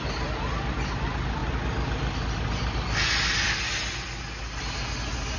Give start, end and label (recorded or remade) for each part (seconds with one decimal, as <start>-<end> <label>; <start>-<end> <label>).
0.0-5.4 recorded